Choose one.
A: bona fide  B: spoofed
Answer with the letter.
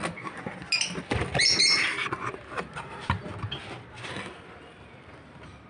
A